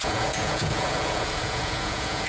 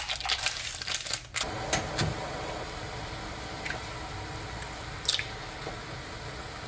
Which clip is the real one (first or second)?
second